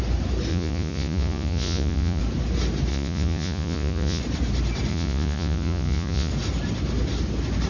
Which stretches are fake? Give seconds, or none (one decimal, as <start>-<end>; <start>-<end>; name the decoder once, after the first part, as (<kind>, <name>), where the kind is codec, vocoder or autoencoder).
0.5-2.2 (vocoder, Vocos); 2.9-4.2; 4.9-6.3